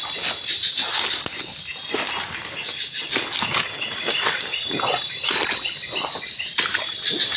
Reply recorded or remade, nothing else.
recorded